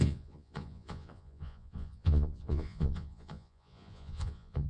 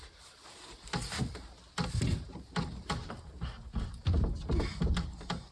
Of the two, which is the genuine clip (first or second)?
second